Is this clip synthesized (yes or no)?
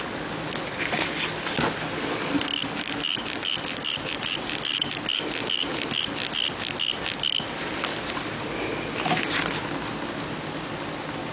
no